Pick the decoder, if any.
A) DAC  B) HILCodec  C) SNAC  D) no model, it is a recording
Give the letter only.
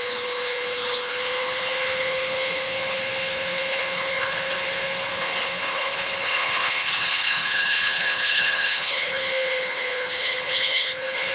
B